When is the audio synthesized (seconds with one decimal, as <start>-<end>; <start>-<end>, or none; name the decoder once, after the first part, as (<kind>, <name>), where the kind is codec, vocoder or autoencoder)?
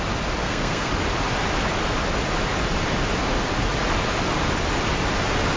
0.4-0.9 (codec, SNAC)